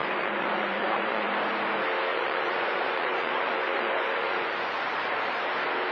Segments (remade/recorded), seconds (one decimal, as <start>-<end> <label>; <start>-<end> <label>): 0.0-1.3 remade; 1.3-2.1 recorded; 2.1-5.3 remade; 5.3-5.9 recorded